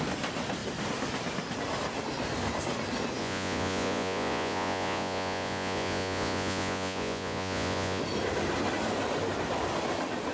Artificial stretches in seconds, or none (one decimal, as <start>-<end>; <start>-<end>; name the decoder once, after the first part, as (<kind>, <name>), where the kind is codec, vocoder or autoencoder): 3.2-8.0 (vocoder, Vocos)